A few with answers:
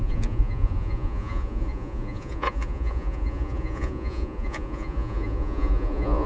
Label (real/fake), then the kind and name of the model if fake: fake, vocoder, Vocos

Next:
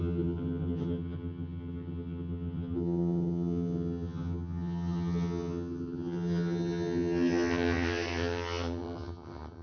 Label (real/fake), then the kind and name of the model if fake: fake, vocoder, HiFi-GAN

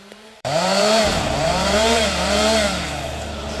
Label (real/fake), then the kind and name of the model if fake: fake, vocoder, BigVGAN v2